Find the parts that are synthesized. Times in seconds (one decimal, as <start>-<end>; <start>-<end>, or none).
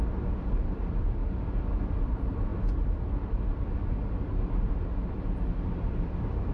0.0-1.2; 2.0-6.5